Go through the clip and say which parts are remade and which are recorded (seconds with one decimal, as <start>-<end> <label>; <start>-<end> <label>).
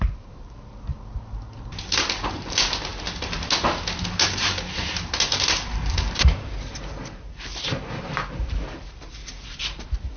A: 0.0-2.9 remade; 2.9-4.1 recorded; 4.1-10.2 remade